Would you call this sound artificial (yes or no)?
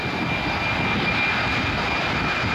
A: no